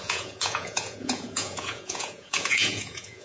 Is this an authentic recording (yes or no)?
no